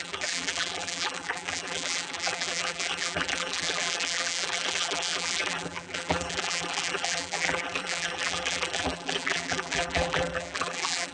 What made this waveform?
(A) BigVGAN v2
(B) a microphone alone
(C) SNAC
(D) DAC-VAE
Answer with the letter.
A